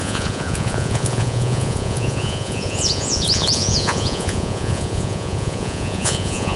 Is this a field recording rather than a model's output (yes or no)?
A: no